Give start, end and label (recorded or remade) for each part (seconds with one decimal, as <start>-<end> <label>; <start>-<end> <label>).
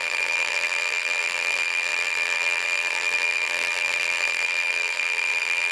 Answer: 0.0-5.7 remade